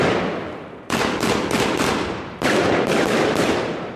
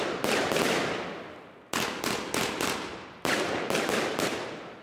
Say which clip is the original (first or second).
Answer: second